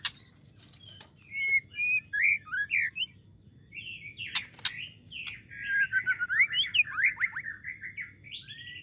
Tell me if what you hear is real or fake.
real